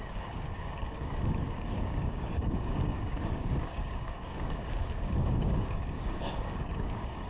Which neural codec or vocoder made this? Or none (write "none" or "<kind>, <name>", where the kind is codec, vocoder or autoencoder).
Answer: codec, DAC